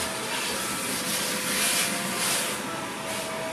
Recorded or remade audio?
recorded